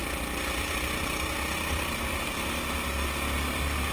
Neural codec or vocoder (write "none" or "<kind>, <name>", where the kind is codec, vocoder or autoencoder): none